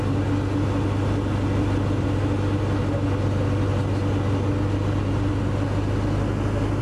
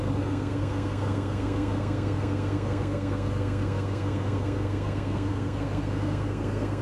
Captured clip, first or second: first